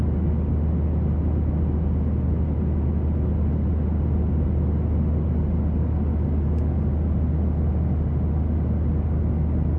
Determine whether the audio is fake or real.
real